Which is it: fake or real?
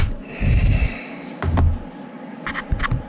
real